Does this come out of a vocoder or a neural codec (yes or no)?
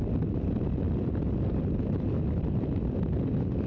yes